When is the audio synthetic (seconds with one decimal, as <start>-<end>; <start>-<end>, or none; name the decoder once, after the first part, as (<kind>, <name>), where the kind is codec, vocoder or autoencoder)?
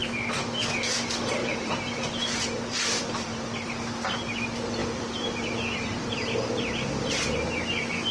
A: 1.4-3.7 (vocoder, BigVGAN v2); 4.8-7.2